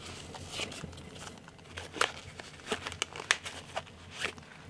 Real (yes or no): yes